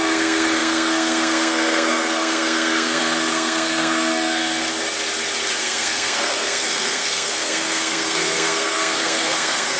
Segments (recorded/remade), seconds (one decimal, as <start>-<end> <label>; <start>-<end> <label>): 0.0-4.4 remade; 4.4-5.6 recorded; 5.6-9.8 remade